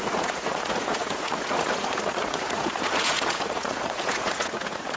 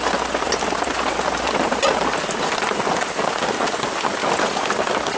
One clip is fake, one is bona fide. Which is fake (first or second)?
first